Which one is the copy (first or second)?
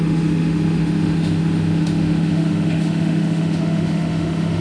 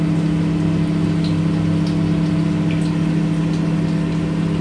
first